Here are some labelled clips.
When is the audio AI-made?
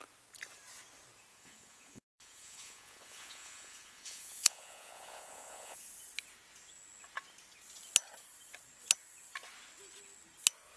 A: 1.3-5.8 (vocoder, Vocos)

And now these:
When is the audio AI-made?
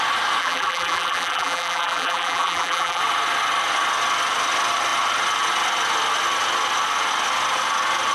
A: 0.4-3.0 (vocoder, BigVGAN v2)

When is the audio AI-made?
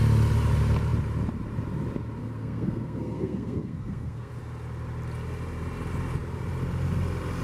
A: 2.2-4.3 (codec, SNAC)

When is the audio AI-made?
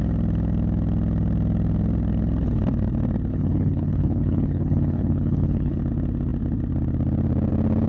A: 3.3-5.8 (codec, HILCodec)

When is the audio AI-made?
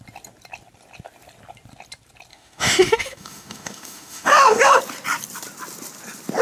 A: 2.3-4.8 (autoencoder, DAC-VAE)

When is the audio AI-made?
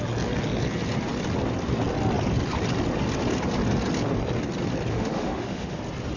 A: 4.9-5.8 (autoencoder, DAC-VAE)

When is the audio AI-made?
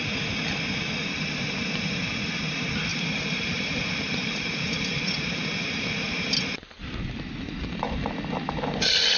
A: 2.9-5.4 (vocoder, BigVGAN v2)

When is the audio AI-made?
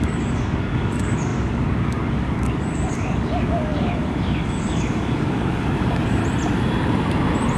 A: 0.0-6.2 (codec, DAC)